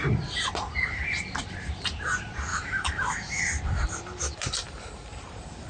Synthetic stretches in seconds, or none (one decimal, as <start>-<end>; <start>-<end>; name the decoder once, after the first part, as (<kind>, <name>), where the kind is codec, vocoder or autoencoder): 2.5-3.4 (autoencoder, DAC-VAE)